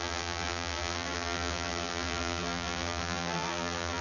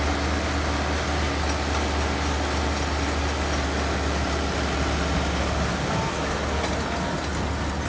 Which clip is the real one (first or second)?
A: second